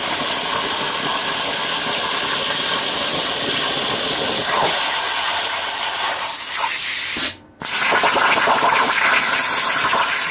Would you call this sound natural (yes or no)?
yes